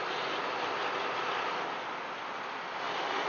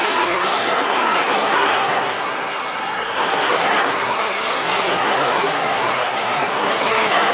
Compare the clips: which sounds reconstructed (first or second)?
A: second